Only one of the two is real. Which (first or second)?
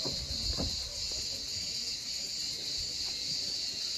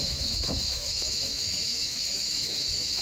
first